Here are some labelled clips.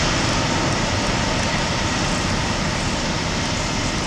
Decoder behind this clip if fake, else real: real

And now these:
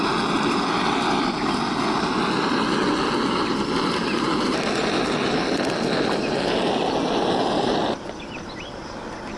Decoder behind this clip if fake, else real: real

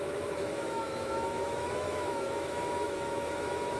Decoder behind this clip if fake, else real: fake, autoencoder, DAC-VAE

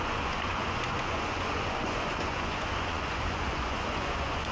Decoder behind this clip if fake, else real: fake, vocoder, Vocos